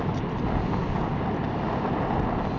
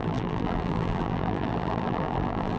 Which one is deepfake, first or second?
second